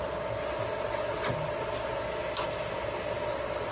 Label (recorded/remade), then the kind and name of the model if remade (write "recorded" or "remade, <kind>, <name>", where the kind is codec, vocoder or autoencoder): recorded